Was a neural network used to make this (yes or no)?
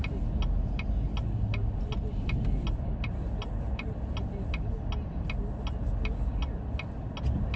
no